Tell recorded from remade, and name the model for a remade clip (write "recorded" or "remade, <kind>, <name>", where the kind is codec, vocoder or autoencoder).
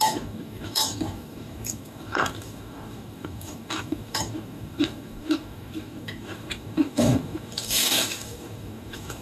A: remade, codec, DAC